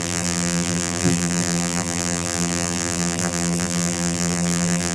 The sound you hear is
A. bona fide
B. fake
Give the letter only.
B